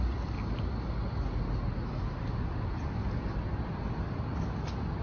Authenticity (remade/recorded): recorded